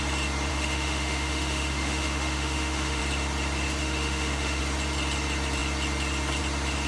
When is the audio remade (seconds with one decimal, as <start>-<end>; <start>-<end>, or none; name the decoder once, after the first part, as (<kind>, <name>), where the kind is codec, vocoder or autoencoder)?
0.5-3.0 (autoencoder, DAC-VAE); 3.8-4.6